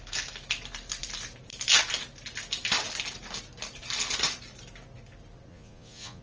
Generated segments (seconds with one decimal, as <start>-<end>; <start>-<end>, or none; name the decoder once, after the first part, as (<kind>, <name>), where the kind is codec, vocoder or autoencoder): 5.5-6.2 (vocoder, Vocos)